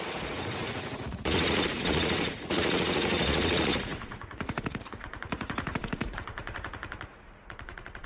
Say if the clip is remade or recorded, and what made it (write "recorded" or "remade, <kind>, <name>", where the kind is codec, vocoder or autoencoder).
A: remade, vocoder, Vocos